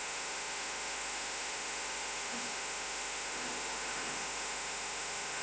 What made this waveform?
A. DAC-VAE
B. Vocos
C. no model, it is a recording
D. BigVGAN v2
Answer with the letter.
A